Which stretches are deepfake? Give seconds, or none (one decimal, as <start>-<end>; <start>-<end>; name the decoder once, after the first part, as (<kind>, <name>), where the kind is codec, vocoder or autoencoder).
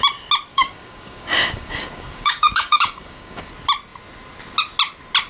0.5-3.5 (codec, DAC)